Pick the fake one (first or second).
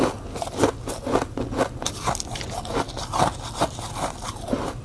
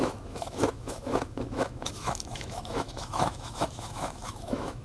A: second